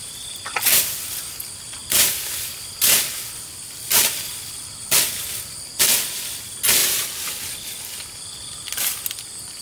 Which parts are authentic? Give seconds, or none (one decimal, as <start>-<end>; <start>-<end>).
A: 0.0-6.8; 7.4-9.6

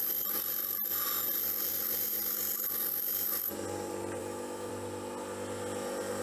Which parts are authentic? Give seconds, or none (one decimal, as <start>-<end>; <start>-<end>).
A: 0.0-4.2; 4.7-6.2

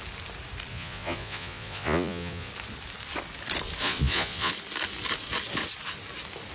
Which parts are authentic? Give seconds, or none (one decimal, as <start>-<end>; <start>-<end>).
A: 0.0-0.7; 2.5-3.8; 4.5-6.5

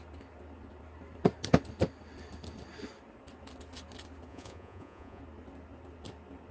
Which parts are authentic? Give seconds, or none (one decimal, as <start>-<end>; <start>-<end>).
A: 0.0-4.3; 5.2-6.5

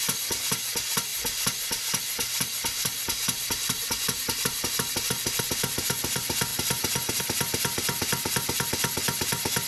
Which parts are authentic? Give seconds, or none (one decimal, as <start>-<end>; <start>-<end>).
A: 0.0-6.5; 7.2-9.7

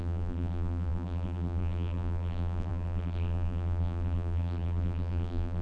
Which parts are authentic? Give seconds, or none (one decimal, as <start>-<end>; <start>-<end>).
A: none